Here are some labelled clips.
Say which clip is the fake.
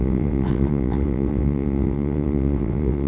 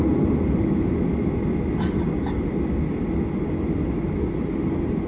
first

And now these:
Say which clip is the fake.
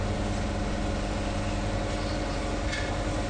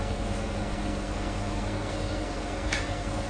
second